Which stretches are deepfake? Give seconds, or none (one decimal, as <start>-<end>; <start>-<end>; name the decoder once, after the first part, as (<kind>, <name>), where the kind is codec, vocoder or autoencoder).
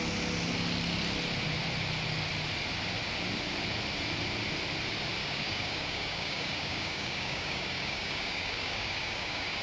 5.2-9.6 (codec, DAC)